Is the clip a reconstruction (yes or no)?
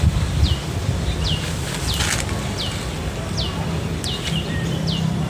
no